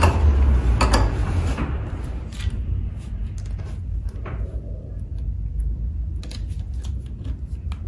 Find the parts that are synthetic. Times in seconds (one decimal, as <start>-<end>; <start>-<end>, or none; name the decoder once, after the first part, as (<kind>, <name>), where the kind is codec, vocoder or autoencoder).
none